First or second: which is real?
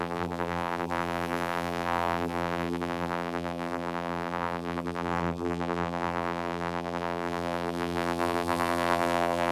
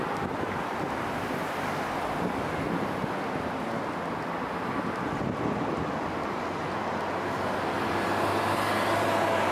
second